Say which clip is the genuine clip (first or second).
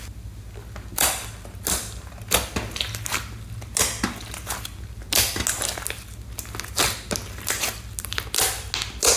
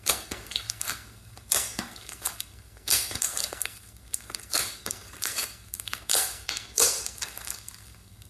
first